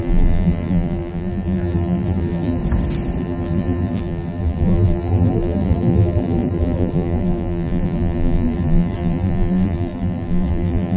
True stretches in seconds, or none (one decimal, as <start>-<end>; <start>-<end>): 2.6-3.2